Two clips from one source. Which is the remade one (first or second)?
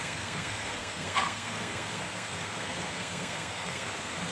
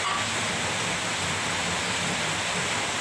first